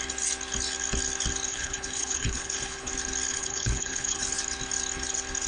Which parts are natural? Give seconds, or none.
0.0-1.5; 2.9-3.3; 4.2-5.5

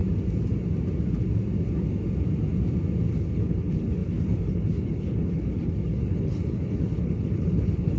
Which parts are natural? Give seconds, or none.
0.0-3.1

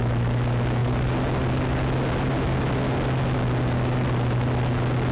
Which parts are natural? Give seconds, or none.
0.0-5.1

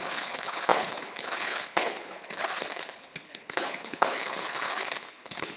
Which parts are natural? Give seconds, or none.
none